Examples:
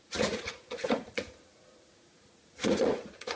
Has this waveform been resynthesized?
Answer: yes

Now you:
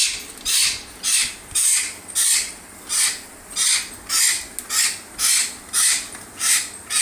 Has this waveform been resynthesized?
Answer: no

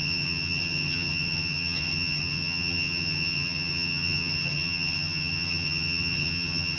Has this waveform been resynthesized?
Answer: yes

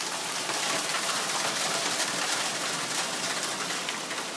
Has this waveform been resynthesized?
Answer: no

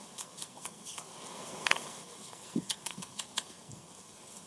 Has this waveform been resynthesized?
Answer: yes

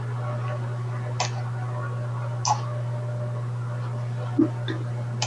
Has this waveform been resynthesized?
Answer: no